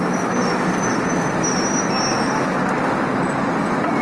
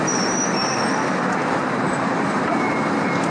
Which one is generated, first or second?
second